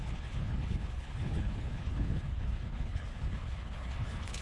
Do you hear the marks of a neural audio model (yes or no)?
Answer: yes